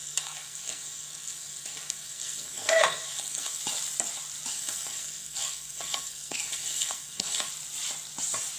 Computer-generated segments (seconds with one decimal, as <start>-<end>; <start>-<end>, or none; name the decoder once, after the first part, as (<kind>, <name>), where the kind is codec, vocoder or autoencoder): 0.0-3.6 (codec, SNAC); 4.5-7.5

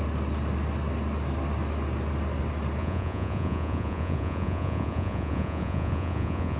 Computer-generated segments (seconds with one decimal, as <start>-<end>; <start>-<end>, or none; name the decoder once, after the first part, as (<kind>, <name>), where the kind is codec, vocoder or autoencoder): 2.8-6.6 (vocoder, Vocos)